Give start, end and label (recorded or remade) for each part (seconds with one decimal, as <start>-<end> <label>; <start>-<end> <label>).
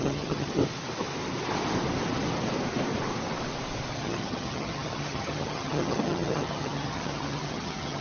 0.0-0.6 remade; 0.6-3.9 recorded; 3.9-8.0 remade